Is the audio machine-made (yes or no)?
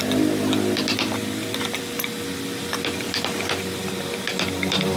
no